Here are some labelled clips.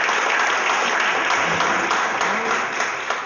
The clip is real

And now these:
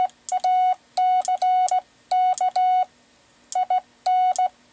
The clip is real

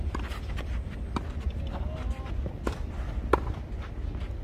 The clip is real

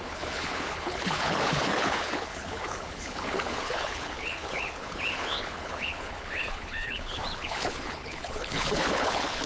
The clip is fake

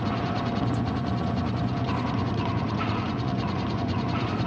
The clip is fake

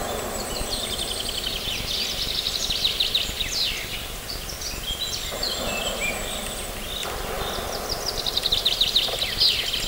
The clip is real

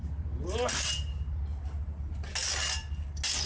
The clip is real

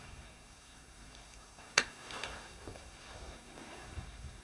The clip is fake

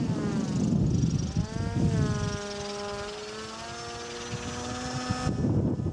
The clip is real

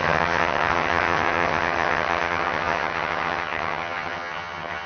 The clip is fake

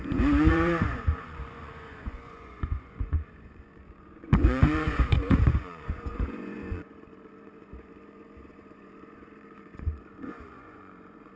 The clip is fake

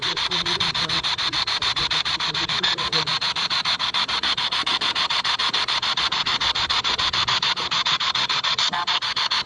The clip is fake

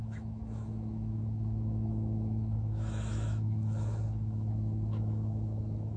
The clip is fake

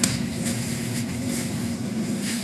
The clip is fake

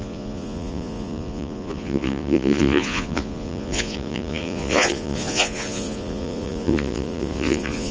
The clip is fake